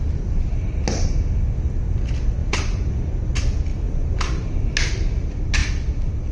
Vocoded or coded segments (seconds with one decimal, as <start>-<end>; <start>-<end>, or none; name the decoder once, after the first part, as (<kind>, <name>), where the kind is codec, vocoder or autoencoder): 2.4-3.3 (vocoder, BigVGAN v2); 3.7-4.2